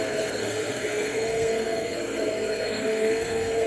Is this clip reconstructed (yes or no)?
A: yes